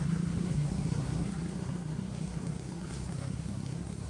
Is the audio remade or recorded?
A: remade